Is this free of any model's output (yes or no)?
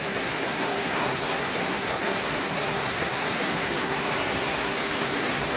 no